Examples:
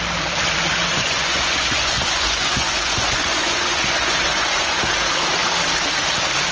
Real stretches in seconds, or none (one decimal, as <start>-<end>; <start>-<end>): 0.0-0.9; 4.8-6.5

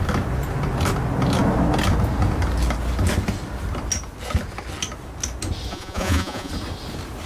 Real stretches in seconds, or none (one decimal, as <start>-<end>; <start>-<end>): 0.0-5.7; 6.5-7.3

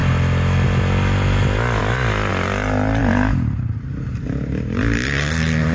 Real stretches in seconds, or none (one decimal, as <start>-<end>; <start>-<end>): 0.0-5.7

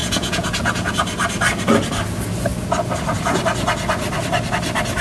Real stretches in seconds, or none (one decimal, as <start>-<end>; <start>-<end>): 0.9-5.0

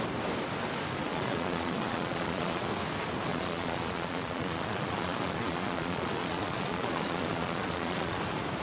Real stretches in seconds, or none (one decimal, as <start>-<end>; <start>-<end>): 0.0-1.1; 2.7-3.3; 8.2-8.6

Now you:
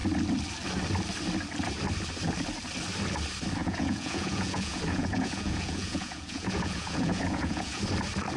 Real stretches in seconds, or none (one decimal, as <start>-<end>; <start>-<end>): 0.0-3.6; 7.8-8.4

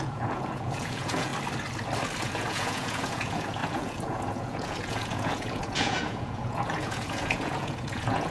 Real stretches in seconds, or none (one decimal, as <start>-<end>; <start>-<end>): 1.3-2.2

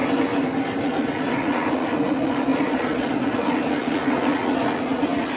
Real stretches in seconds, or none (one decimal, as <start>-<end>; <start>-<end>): 0.0-0.8